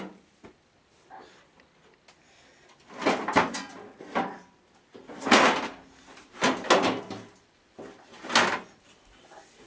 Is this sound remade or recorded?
recorded